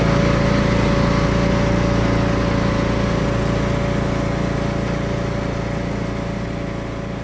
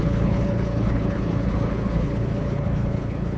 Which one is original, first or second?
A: first